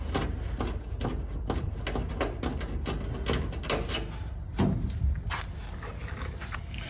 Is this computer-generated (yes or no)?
no